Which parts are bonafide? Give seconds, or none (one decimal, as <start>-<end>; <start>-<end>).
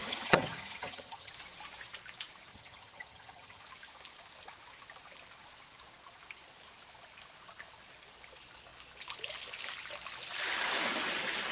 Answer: 1.3-2.5; 3.6-11.5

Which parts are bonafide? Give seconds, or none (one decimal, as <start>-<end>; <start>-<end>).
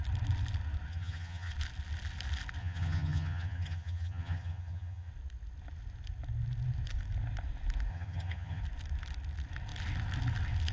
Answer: 0.0-0.9; 1.5-2.6; 5.1-7.9; 8.6-10.7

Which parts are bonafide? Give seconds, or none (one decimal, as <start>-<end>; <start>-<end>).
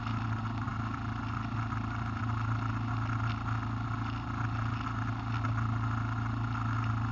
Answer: 0.0-7.1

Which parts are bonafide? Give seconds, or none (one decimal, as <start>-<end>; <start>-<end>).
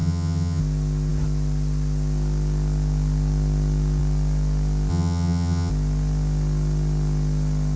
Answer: 0.6-4.9; 5.7-7.8